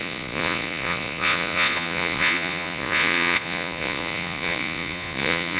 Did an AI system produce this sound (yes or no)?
yes